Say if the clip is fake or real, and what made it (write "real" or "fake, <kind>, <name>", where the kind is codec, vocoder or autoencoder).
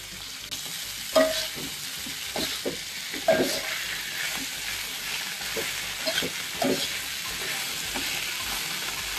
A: real